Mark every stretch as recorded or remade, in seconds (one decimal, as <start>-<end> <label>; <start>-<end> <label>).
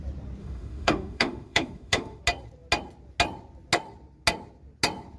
0.0-0.4 recorded; 0.4-2.2 remade; 2.2-5.2 recorded